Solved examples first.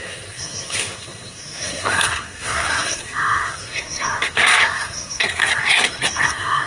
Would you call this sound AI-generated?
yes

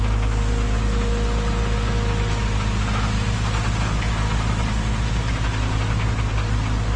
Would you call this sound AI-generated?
no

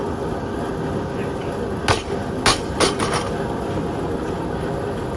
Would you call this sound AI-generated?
no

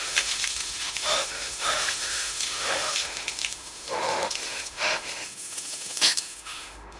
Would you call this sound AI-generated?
yes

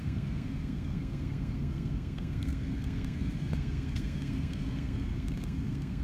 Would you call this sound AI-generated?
yes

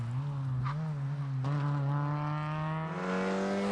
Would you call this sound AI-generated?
no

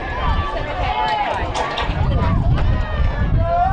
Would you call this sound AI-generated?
no